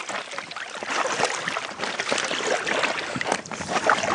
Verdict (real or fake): real